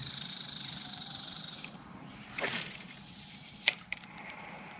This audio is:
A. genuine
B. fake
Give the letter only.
B